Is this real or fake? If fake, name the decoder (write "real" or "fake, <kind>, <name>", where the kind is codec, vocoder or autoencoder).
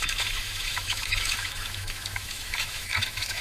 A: fake, autoencoder, DAC-VAE